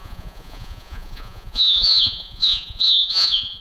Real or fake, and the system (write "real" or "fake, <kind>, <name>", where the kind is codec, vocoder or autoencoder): fake, vocoder, Vocos